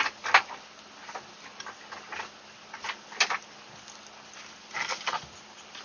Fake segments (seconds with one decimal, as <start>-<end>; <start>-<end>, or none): none